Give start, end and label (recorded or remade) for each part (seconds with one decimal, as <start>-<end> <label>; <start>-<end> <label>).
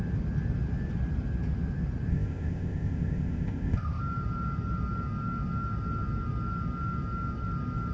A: 0.0-2.1 recorded; 2.1-4.0 remade; 4.0-7.9 recorded